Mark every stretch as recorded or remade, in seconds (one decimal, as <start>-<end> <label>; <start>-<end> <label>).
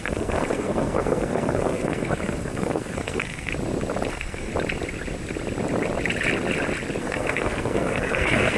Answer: 0.0-3.5 remade; 3.5-4.1 recorded; 4.1-4.5 remade; 4.5-7.0 recorded; 7.0-8.6 remade